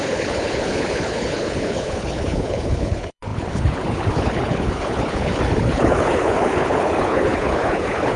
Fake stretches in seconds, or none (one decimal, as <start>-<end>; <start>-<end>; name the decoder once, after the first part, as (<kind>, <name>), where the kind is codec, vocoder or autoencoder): 0.0-8.2 (codec, HILCodec)